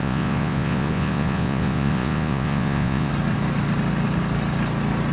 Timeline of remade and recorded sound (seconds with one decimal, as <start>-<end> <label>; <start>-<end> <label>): 0.0-3.1 remade; 3.1-5.1 recorded